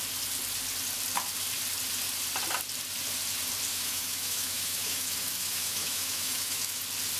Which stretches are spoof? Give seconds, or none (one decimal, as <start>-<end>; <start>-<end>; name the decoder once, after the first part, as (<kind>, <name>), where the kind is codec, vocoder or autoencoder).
3.7-6.8 (autoencoder, DAC-VAE)